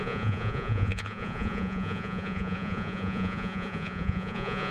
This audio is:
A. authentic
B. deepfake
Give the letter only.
B